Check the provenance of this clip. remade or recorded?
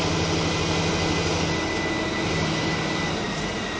recorded